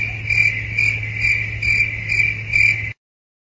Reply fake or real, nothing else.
real